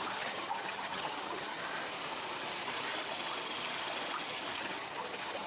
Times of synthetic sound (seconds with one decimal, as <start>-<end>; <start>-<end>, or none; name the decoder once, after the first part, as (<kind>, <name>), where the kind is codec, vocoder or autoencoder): 0.0-1.6 (vocoder, HiFi-GAN); 4.6-5.5